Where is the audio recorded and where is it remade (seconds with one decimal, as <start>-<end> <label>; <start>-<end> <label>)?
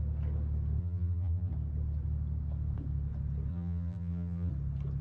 0.0-0.8 recorded; 0.8-1.5 remade; 1.5-3.5 recorded; 3.5-4.5 remade; 4.5-5.0 recorded